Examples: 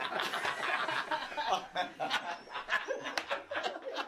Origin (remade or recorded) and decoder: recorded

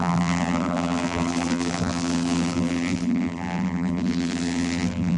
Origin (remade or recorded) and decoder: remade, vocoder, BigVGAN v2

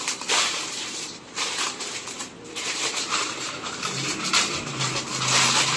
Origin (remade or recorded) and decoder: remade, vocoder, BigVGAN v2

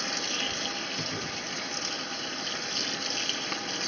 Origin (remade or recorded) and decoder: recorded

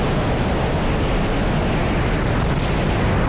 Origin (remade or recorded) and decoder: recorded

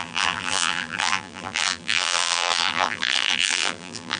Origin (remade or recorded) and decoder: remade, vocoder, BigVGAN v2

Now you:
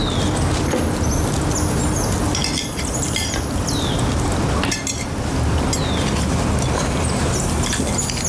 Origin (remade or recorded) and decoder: recorded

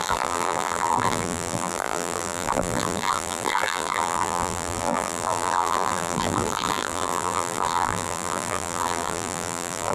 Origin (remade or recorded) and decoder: remade, vocoder, BigVGAN v2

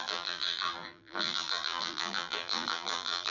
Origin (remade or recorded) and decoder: remade, vocoder, BigVGAN v2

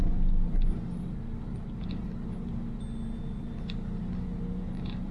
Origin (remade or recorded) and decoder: recorded